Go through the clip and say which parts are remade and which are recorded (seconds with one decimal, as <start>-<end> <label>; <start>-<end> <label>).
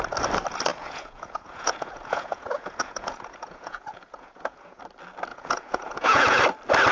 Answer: 0.0-0.7 recorded; 0.7-4.8 remade; 4.8-5.3 recorded; 5.3-6.4 remade; 6.4-6.9 recorded